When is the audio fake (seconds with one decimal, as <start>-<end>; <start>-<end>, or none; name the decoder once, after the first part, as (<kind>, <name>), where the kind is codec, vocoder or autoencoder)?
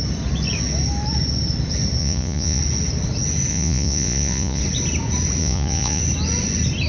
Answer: 2.0-2.6 (vocoder, Vocos); 3.5-4.6; 5.4-6.0